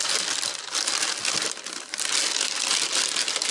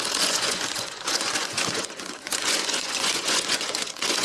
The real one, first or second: first